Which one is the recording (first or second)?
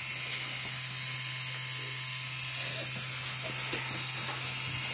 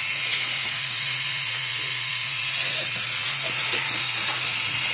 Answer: first